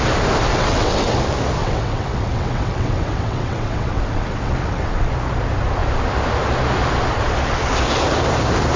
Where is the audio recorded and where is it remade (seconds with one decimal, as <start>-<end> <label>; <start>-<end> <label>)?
0.0-0.5 recorded; 0.5-1.2 remade; 1.2-1.6 recorded; 1.6-5.1 remade; 5.1-8.8 recorded